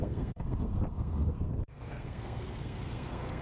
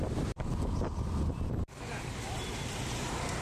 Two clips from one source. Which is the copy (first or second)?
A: first